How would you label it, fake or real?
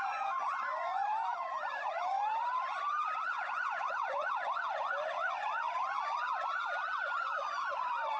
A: fake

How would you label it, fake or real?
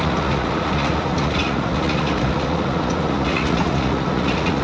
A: fake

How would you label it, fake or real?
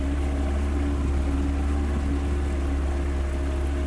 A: real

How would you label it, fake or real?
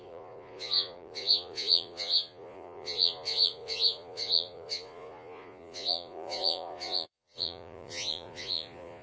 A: fake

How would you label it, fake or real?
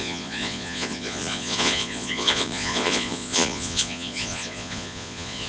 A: fake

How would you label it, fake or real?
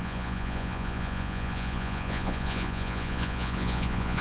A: fake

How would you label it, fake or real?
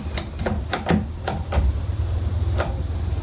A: real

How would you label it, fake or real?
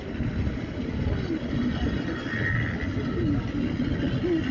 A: real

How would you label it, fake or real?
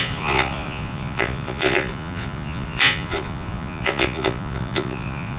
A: fake